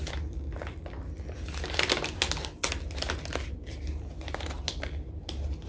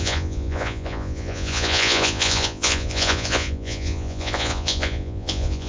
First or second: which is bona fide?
first